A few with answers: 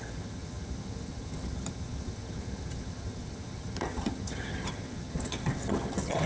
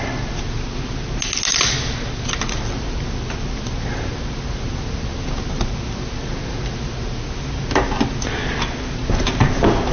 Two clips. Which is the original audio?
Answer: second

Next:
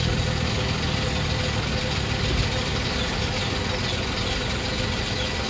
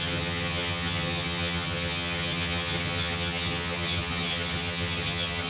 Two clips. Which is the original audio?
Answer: first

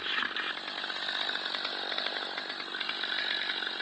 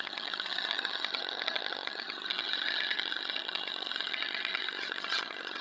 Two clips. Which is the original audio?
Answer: first